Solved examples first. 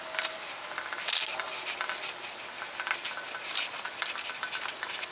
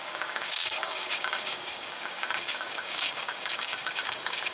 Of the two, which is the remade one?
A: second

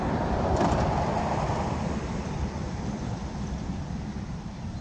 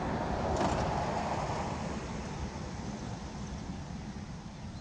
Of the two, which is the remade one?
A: first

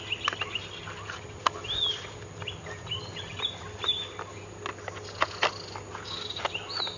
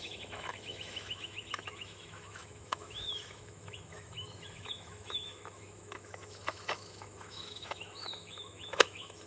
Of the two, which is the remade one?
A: second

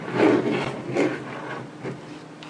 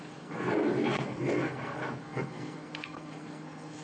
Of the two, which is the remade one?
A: second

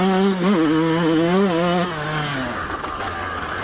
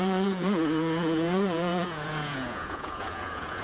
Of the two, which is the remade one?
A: second